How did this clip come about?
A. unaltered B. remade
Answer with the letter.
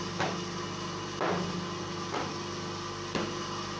A